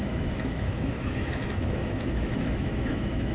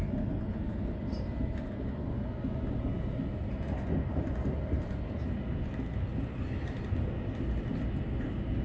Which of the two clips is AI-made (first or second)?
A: first